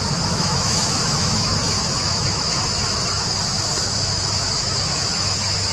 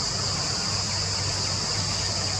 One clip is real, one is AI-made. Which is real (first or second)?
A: second